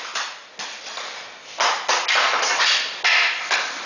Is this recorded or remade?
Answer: recorded